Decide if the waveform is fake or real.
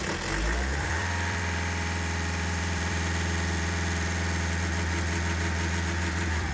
fake